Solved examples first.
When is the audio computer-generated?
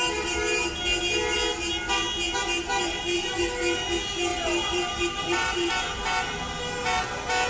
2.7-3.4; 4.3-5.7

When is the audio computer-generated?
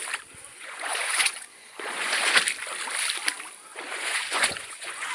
0.5-2.3; 3.7-5.1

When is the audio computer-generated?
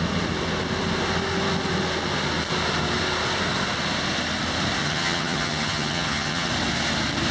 4.8-6.5